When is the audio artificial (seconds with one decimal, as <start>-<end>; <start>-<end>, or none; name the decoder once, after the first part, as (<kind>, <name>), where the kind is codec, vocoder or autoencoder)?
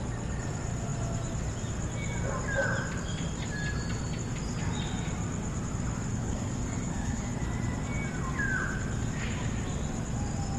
6.1-7.3 (codec, SNAC)